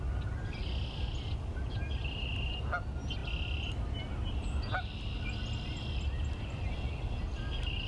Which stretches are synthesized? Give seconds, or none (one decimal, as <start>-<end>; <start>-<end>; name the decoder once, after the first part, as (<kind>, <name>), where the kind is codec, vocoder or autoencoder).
none